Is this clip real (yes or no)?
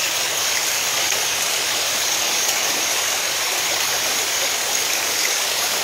no